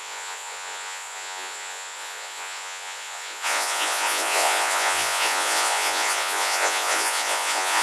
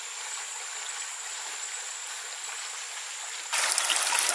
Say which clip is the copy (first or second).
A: first